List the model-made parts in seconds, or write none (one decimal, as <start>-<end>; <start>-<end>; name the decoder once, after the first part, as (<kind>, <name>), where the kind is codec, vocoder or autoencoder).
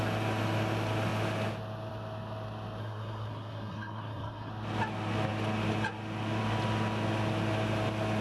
2.8-4.5 (codec, SNAC)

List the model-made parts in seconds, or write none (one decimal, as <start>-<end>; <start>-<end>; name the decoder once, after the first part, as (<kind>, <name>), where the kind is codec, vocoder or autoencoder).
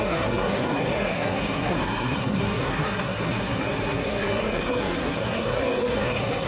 0.0-6.5 (codec, SNAC)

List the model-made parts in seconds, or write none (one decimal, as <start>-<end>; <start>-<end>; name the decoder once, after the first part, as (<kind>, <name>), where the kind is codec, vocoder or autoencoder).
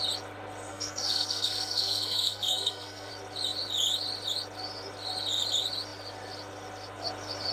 0.7-3.1 (codec, SNAC)